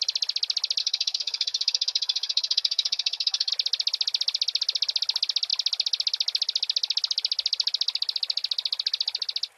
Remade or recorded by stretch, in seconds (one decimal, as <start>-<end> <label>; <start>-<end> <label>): 0.0-0.8 recorded; 0.8-3.5 remade; 3.5-9.6 recorded